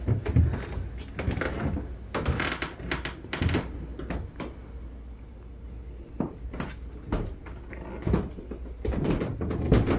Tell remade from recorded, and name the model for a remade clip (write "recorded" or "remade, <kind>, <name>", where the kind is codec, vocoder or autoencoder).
recorded